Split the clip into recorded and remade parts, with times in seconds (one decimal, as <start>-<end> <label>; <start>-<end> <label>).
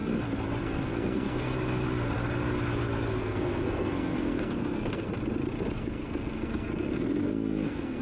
0.0-0.6 recorded; 0.6-1.5 remade; 1.5-3.2 recorded; 3.2-5.1 remade; 5.1-5.7 recorded; 5.7-8.0 remade